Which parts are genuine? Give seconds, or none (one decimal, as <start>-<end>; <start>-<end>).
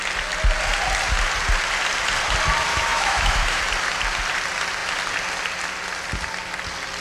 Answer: 0.0-2.7; 3.6-7.0